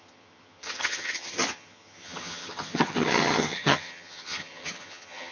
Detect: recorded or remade remade